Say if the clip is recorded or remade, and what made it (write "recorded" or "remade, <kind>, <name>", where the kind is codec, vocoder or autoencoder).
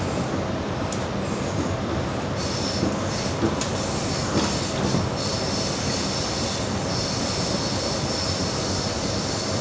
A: recorded